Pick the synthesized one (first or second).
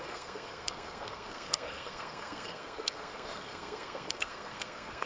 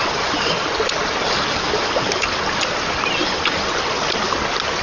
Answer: first